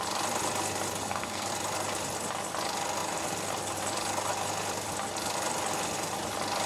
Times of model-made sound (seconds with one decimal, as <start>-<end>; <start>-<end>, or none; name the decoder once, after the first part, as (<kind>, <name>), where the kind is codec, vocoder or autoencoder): 1.0-1.5 (codec, SNAC)